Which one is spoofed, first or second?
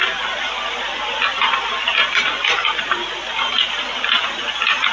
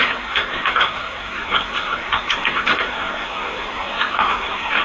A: second